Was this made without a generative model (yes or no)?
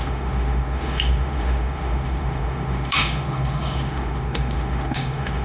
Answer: no